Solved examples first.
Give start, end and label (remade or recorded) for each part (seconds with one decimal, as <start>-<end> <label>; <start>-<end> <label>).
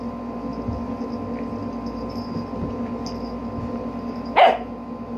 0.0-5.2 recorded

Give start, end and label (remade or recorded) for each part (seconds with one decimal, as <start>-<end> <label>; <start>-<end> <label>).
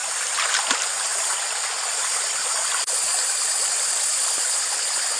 0.0-1.1 recorded; 1.1-4.2 remade; 4.2-5.2 recorded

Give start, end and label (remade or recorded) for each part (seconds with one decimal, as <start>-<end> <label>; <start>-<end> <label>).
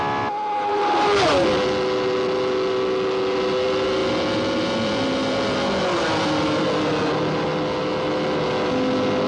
0.0-9.3 recorded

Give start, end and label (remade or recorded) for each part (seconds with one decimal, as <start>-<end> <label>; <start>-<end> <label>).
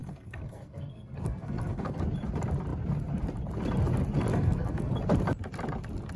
0.0-2.0 remade; 2.0-4.3 recorded; 4.3-4.9 remade; 4.9-6.2 recorded